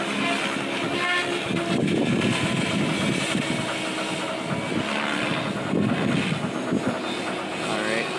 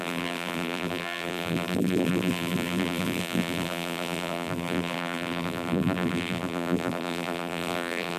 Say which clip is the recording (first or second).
first